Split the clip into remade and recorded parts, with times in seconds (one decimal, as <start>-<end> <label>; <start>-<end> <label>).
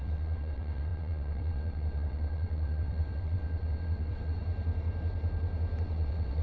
0.0-4.4 remade; 4.4-5.8 recorded; 5.8-6.4 remade